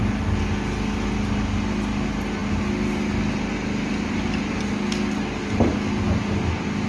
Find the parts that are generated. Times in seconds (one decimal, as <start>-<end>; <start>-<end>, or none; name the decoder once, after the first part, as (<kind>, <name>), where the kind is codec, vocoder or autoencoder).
none